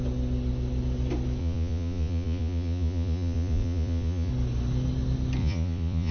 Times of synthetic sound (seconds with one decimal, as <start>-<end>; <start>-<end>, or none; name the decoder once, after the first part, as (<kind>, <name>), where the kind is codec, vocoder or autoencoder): 1.4-4.3 (vocoder, Vocos); 5.4-6.1